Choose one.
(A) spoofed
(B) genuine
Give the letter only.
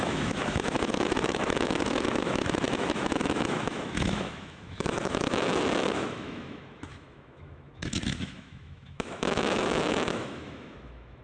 A